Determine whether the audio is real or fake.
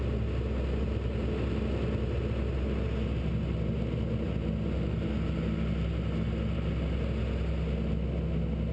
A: real